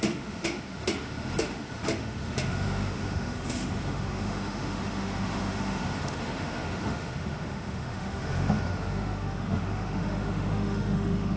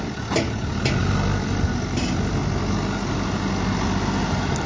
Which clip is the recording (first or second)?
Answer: second